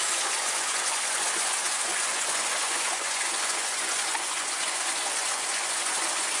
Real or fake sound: fake